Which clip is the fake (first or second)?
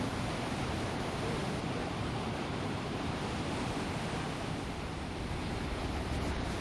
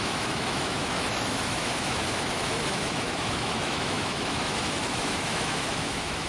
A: second